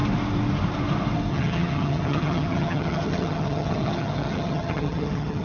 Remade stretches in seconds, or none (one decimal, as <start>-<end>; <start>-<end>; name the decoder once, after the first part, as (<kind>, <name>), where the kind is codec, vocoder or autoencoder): 1.3-5.4 (vocoder, HiFi-GAN)